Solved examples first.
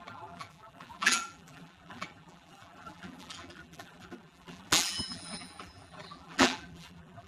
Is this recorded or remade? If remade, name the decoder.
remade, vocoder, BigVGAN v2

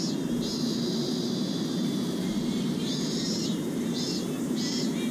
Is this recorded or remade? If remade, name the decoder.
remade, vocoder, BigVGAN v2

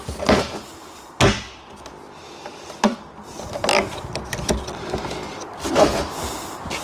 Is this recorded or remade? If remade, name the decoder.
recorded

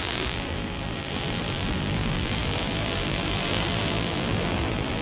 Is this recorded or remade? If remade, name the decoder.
remade, vocoder, BigVGAN v2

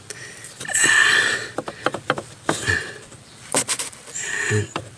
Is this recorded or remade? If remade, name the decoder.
remade, vocoder, BigVGAN v2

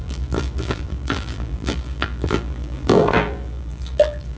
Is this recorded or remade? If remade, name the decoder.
remade, vocoder, BigVGAN v2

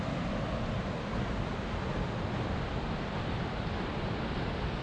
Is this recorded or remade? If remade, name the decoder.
remade, vocoder, BigVGAN v2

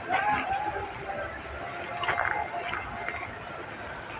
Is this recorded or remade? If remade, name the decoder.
recorded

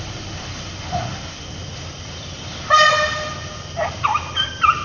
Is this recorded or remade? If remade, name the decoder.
recorded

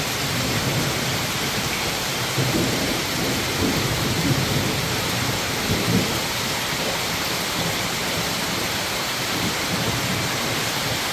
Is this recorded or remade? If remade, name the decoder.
remade, vocoder, BigVGAN v2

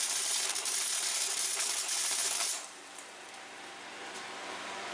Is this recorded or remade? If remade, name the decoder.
remade, vocoder, BigVGAN v2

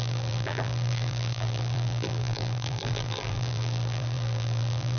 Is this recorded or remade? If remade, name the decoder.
remade, vocoder, BigVGAN v2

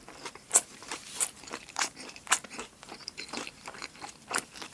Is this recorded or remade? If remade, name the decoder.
remade, vocoder, BigVGAN v2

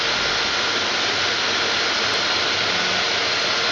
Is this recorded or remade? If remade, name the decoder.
remade, vocoder, BigVGAN v2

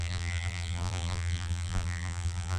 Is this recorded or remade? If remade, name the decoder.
remade, vocoder, BigVGAN v2